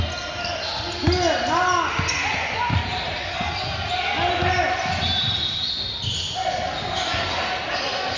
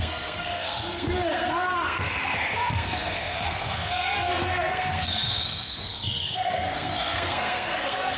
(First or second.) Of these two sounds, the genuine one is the first